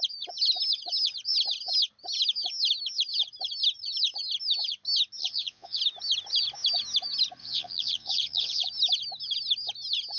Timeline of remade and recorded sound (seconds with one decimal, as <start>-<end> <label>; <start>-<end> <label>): 0.0-5.2 recorded; 5.2-5.8 remade; 5.8-7.4 recorded; 7.4-8.7 remade; 8.7-10.2 recorded